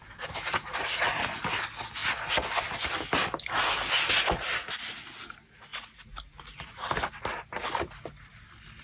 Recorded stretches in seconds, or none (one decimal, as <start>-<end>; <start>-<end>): 1.2-8.8